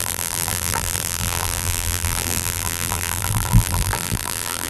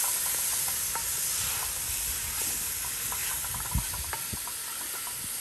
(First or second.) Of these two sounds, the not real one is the first